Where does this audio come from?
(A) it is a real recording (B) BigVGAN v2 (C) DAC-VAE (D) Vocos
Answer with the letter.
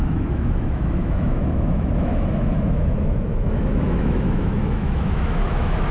C